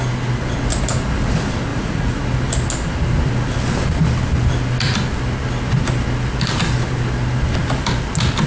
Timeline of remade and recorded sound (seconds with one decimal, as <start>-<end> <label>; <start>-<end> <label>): 0.0-1.7 recorded; 1.7-2.2 remade; 2.2-8.5 recorded